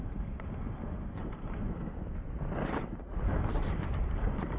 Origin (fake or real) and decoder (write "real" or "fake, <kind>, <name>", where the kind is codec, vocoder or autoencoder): real